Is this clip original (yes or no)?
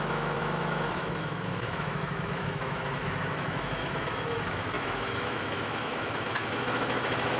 no